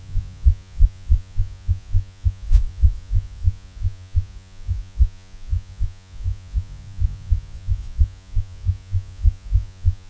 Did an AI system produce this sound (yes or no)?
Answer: yes